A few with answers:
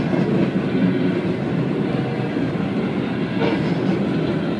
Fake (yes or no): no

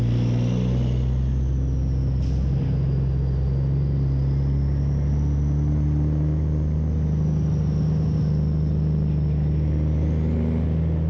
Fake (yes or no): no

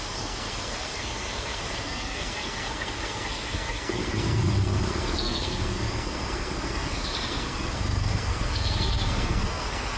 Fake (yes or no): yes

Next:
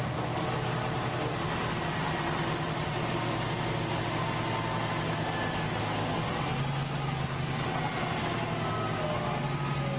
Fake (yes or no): no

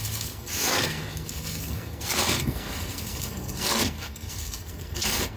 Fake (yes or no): yes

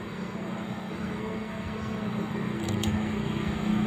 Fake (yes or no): yes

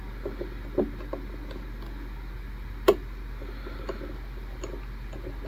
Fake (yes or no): no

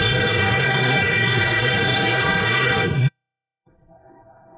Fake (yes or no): yes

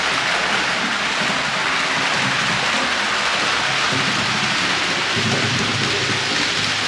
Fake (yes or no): no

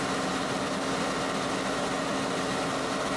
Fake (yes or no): no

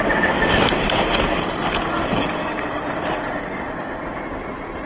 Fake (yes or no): no